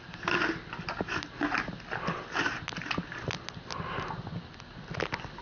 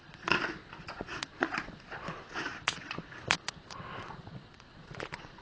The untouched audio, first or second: first